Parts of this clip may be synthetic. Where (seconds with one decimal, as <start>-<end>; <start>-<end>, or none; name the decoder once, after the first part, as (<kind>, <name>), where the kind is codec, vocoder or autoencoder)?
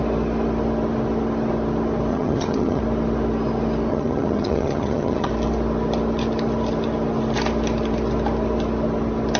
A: 2.1-2.8 (vocoder, HiFi-GAN); 3.9-5.3